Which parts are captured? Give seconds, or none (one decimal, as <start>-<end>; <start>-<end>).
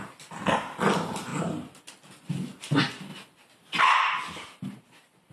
0.0-5.3